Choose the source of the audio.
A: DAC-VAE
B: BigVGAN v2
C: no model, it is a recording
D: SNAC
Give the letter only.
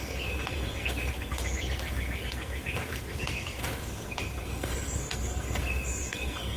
D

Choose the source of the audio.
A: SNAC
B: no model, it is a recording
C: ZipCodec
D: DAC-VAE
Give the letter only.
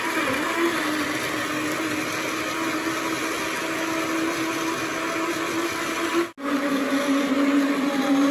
B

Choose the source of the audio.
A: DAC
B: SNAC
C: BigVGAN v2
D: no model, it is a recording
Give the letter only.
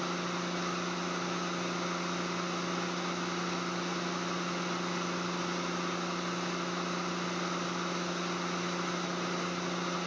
D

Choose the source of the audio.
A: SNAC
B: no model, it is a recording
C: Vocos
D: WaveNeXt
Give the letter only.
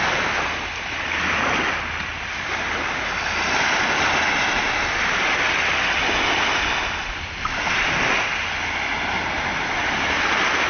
B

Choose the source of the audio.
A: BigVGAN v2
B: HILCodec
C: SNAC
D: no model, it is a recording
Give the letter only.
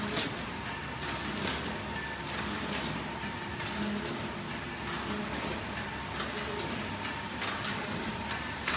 D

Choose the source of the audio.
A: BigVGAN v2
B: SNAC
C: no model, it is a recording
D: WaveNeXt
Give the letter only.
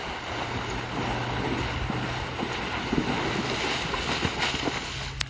C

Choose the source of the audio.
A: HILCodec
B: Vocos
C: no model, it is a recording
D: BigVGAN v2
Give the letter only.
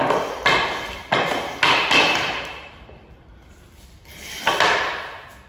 C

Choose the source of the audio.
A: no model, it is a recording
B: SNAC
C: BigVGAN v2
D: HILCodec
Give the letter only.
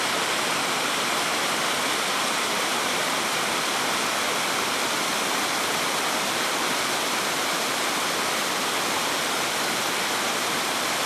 C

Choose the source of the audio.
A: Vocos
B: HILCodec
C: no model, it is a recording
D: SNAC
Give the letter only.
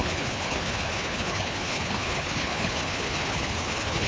B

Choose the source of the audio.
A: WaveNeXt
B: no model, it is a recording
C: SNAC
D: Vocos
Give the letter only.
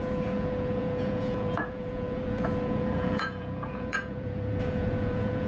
D